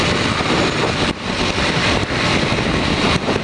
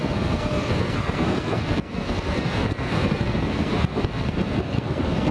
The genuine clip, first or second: first